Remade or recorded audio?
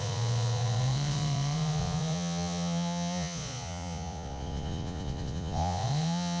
remade